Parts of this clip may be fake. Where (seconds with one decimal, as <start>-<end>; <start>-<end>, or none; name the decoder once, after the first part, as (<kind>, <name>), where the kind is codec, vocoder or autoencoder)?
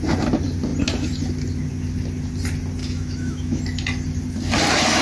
2.8-3.6 (autoencoder, DAC-VAE)